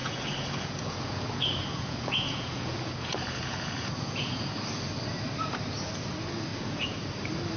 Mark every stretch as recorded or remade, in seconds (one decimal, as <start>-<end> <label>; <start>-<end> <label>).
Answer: 0.0-4.6 remade; 4.6-6.5 recorded; 6.5-7.0 remade; 7.0-7.6 recorded